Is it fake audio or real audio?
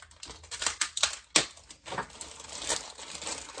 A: real